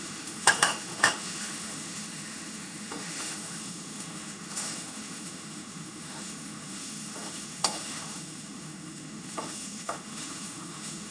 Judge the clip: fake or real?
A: fake